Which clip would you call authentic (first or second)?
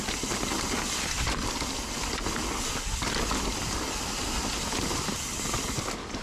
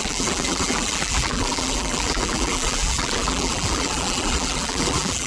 first